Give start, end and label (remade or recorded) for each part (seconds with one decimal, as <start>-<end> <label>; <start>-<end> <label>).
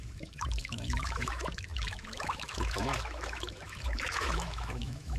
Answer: 0.0-5.2 remade